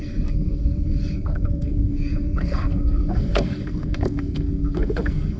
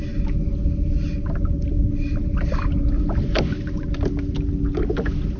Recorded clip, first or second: second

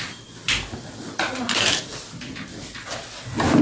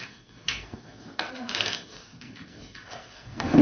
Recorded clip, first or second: first